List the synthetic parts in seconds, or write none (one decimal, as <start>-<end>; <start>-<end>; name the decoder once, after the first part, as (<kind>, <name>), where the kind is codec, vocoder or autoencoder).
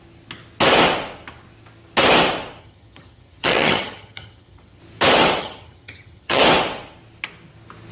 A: 2.6-4.8 (vocoder, HiFi-GAN); 5.4-6.4